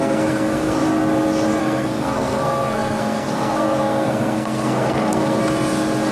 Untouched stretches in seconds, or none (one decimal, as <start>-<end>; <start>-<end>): 0.8-1.6; 5.4-6.1